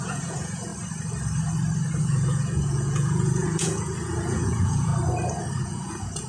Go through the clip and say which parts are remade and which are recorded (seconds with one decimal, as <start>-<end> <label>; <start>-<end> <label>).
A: 0.0-0.7 remade; 0.7-2.0 recorded; 2.0-4.9 remade; 4.9-5.6 recorded; 5.6-6.3 remade